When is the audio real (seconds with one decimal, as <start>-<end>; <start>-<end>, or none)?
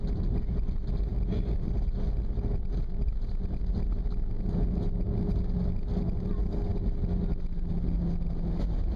0.0-9.0